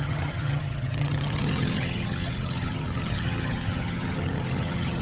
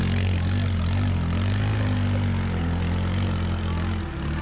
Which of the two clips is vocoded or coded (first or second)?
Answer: first